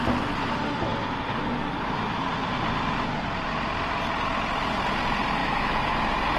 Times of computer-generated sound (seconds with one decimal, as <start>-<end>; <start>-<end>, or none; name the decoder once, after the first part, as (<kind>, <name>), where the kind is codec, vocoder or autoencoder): 5.4-6.0 (autoencoder, DAC-VAE)